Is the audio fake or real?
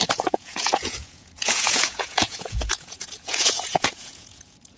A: fake